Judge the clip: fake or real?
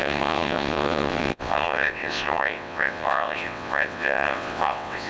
fake